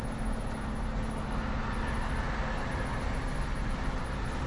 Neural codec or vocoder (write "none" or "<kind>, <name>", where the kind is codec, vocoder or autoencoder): none